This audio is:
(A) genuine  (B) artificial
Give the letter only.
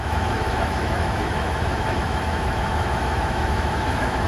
B